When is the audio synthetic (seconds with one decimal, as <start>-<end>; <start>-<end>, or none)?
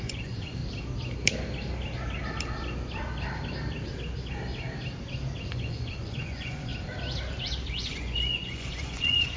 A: 0.0-0.6; 5.5-6.7; 7.7-9.4